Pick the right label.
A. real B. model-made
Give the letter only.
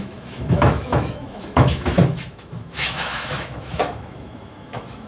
B